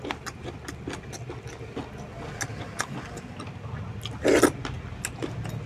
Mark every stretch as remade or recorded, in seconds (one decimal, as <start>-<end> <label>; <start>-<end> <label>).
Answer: 0.0-5.7 recorded